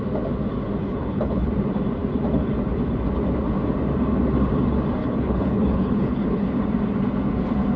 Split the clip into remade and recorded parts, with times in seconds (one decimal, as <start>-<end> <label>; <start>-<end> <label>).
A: 0.0-0.8 recorded; 0.8-1.5 remade; 1.5-5.0 recorded; 5.0-6.6 remade; 6.6-7.8 recorded